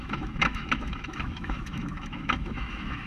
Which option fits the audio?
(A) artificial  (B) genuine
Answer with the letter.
A